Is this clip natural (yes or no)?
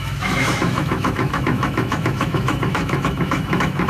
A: no